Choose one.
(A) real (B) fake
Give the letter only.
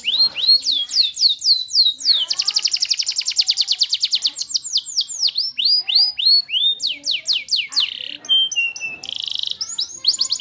A